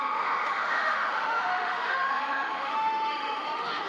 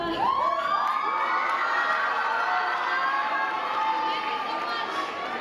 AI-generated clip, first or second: first